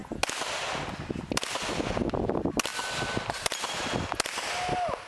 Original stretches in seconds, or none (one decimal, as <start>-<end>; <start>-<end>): 0.0-5.1